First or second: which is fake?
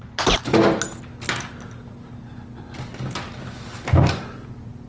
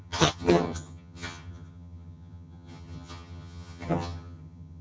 second